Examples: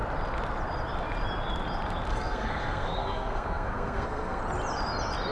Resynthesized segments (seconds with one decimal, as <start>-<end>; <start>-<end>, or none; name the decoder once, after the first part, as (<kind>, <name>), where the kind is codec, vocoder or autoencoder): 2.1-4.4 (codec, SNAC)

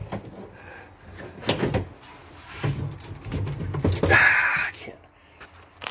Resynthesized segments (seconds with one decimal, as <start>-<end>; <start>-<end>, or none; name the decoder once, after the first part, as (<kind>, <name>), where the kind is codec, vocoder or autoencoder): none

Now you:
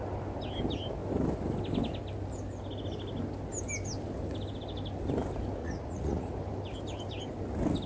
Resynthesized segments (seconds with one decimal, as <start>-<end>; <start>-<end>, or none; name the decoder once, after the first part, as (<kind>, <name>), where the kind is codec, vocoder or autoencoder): 5.6-6.3 (vocoder, Vocos)